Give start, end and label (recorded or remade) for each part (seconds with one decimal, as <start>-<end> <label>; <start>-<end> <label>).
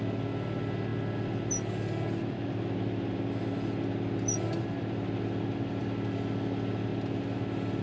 0.0-7.8 recorded